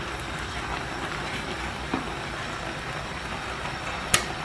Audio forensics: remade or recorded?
recorded